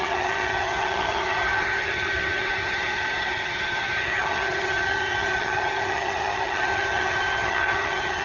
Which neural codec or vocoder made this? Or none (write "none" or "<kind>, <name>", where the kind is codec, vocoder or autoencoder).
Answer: vocoder, HiFi-GAN